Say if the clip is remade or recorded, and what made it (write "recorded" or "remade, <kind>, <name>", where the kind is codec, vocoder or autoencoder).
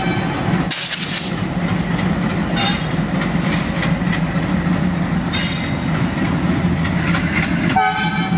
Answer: recorded